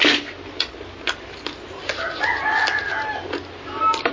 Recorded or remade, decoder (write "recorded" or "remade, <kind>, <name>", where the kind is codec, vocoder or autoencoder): recorded